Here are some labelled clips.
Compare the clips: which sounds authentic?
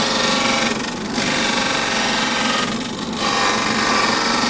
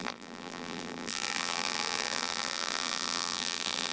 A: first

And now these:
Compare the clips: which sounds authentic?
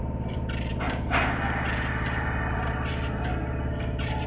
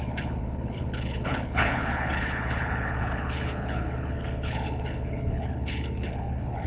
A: first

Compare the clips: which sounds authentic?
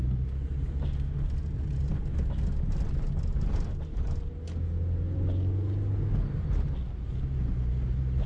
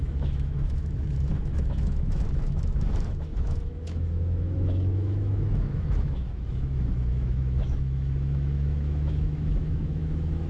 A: first